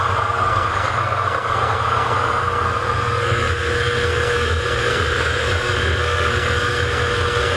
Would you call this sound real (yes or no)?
no